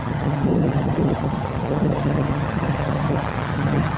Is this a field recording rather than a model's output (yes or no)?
no